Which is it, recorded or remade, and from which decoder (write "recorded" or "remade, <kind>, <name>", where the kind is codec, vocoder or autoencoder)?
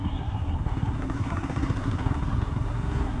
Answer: remade, codec, SNAC